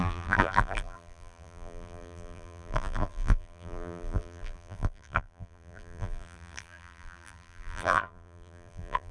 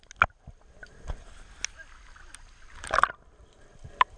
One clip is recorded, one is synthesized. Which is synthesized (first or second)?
first